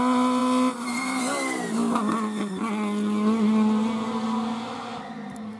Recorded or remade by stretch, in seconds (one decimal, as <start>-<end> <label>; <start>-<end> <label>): 0.0-5.6 recorded